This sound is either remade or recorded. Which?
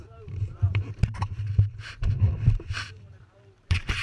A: remade